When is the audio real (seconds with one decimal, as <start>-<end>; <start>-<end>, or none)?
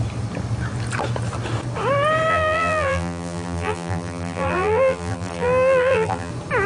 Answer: 0.0-2.3; 6.3-6.7